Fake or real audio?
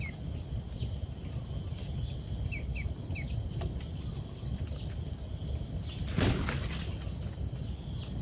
real